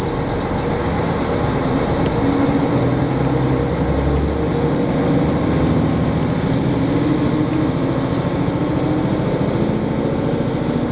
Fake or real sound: real